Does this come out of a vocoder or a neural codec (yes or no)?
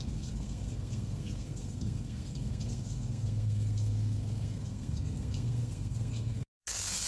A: yes